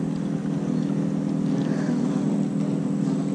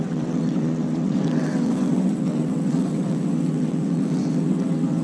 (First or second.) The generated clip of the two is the second